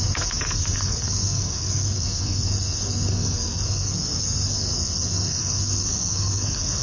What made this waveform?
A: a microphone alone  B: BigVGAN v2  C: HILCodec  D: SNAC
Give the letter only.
D